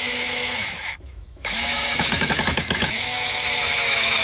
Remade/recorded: remade